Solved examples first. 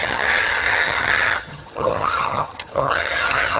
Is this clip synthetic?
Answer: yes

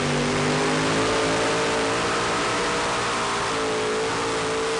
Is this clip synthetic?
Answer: no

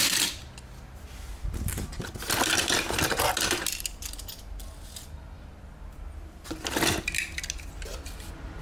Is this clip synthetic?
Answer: no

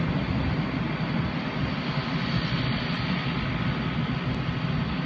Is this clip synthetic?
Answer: no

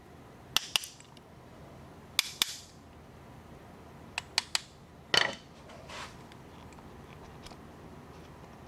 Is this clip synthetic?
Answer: no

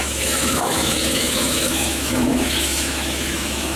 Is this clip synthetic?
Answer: yes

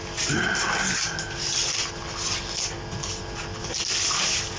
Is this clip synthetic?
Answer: no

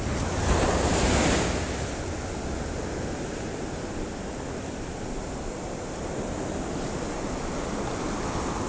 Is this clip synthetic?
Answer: no